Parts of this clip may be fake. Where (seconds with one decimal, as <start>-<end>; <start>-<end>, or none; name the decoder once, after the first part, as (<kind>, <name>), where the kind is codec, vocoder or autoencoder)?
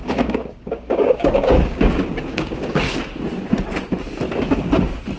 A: 0.0-3.0 (codec, DAC)